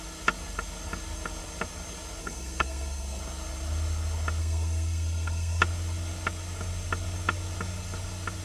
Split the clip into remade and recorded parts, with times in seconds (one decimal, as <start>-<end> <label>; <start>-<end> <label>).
0.0-2.2 recorded; 2.2-3.2 remade; 3.2-4.4 recorded; 4.4-5.6 remade; 5.6-8.4 recorded